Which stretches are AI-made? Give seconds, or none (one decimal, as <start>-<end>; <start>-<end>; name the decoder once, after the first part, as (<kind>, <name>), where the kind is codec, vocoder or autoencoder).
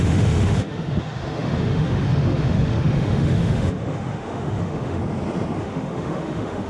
0.0-5.0 (autoencoder, DAC-VAE); 5.6-6.7